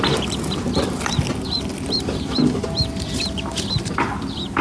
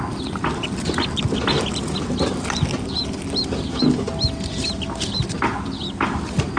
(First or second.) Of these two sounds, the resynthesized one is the first